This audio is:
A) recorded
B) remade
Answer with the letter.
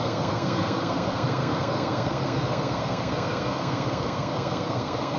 B